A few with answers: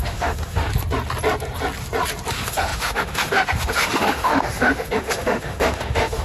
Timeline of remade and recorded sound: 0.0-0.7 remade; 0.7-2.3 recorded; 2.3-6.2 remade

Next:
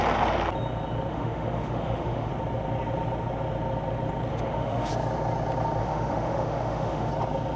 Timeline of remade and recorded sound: 0.0-1.1 recorded; 1.1-2.3 remade; 2.3-4.3 recorded; 4.3-4.9 remade; 4.9-5.8 recorded; 5.8-7.1 remade; 7.1-7.6 recorded

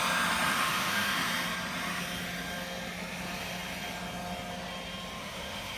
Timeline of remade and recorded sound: 0.0-0.5 recorded; 0.5-1.3 remade; 1.3-5.2 recorded; 5.2-5.8 remade

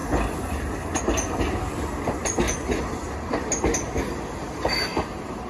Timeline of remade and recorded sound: 0.0-5.5 recorded

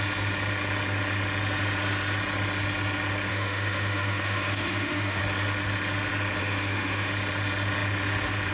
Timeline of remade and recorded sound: 0.0-3.3 recorded; 3.3-5.2 remade; 5.2-6.4 recorded; 6.4-7.1 remade; 7.1-8.5 recorded